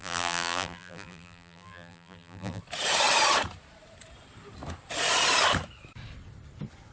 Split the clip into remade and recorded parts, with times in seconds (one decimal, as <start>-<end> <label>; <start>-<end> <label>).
0.0-2.6 remade; 2.6-6.9 recorded